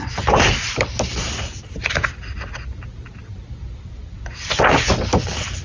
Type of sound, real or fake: real